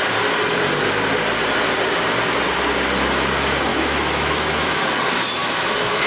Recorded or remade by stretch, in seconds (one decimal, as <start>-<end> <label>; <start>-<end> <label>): 0.0-3.7 recorded; 3.7-4.8 remade; 4.8-5.4 recorded; 5.4-6.1 remade